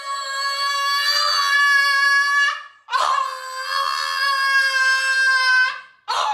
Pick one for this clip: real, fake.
real